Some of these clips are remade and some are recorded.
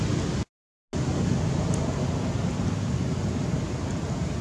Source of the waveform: recorded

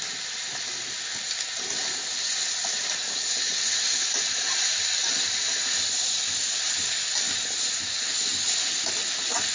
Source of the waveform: recorded